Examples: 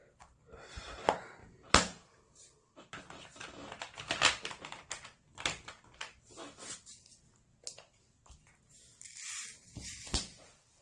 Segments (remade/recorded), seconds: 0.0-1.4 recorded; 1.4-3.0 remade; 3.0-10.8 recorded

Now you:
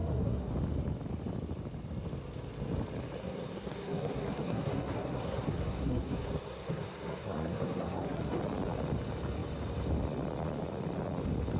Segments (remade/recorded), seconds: 0.0-0.5 remade; 0.5-3.2 recorded; 3.2-8.4 remade; 8.4-11.6 recorded

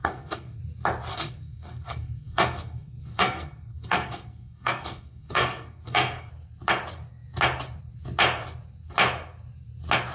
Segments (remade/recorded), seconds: 0.0-0.6 remade; 0.6-1.1 recorded; 1.1-6.3 remade; 6.3-10.1 recorded

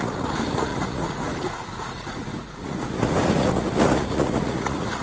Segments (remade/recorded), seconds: 0.0-5.0 remade

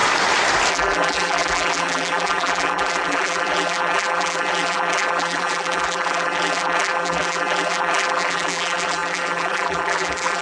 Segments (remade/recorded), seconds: 0.0-0.7 recorded; 0.7-10.4 remade